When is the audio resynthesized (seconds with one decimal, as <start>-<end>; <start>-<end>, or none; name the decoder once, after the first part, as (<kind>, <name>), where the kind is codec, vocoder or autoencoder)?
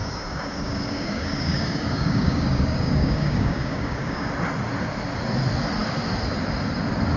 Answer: 0.0-4.3 (codec, DAC)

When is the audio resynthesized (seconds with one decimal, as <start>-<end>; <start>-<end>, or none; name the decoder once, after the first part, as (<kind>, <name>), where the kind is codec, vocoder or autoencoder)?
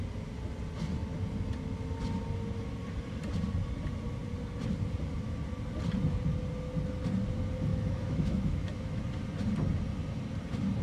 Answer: 7.7-9.0 (autoencoder, DAC-VAE)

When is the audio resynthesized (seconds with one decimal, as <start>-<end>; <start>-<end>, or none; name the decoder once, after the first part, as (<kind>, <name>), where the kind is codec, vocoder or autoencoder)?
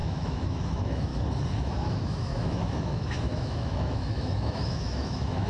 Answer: 0.0-1.1 (autoencoder, DAC-VAE); 1.6-5.5